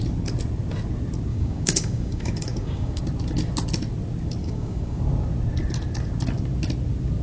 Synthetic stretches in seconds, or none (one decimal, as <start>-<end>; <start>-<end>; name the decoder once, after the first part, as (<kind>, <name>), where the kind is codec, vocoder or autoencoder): 1.3-3.0 (codec, DAC); 4.4-5.0

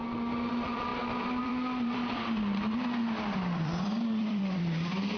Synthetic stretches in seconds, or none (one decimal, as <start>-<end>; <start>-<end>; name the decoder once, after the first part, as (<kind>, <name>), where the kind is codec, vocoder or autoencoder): 0.5-0.9 (vocoder, BigVGAN v2); 1.4-5.2